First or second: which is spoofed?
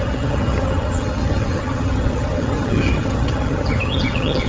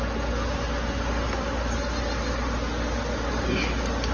first